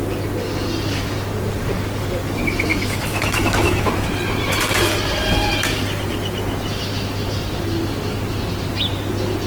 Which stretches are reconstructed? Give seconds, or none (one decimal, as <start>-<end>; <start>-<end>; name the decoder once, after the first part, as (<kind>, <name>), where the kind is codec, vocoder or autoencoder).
2.7-3.9 (autoencoder, DAC-VAE)